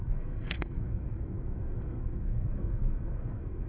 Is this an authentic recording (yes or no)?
no